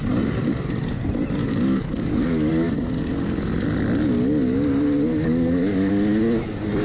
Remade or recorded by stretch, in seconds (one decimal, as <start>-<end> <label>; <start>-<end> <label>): 0.0-1.4 recorded; 1.4-2.5 remade; 2.5-5.1 recorded; 5.1-5.9 remade; 5.9-6.8 recorded